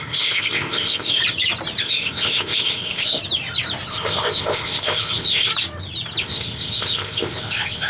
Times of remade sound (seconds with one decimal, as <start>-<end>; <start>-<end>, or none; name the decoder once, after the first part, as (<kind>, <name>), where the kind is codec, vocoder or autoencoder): 0.0-1.2 (codec, ZipCodec); 1.8-3.2; 3.9-5.5; 6.2-7.9

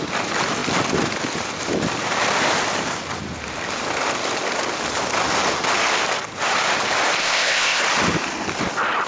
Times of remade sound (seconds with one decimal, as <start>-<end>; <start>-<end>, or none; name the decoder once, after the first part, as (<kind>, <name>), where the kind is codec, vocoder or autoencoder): 7.2-7.8 (codec, ZipCodec)

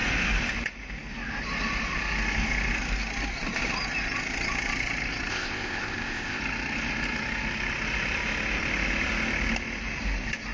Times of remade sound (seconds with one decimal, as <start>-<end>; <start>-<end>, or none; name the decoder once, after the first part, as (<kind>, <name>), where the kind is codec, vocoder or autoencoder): 5.3-6.4 (codec, ZipCodec)